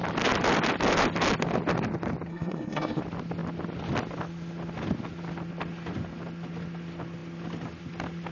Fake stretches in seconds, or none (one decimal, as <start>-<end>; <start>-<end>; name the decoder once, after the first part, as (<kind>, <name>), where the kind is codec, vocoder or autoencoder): 2.3-3.0 (codec, SNAC)